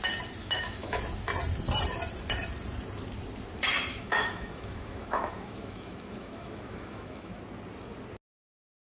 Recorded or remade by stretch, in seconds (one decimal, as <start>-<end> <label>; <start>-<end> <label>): 0.0-0.4 recorded; 0.4-1.0 remade; 1.0-3.9 recorded; 3.9-7.4 remade; 7.4-8.9 recorded